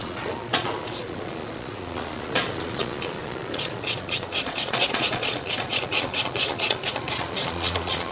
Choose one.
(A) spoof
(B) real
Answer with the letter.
A